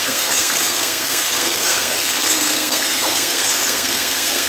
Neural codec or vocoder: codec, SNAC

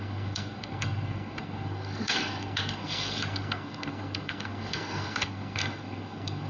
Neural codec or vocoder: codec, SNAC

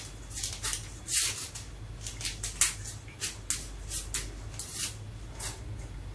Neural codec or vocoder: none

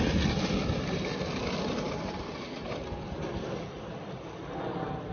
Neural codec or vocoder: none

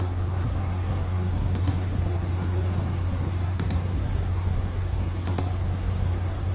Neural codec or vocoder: codec, SNAC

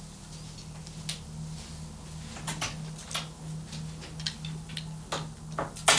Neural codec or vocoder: none